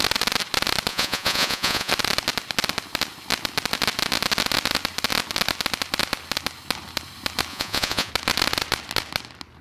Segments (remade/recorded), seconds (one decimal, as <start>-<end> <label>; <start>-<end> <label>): 0.0-0.9 recorded; 0.9-1.9 remade; 1.9-7.5 recorded; 7.5-8.1 remade; 8.1-9.6 recorded